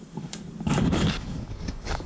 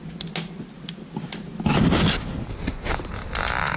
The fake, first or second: first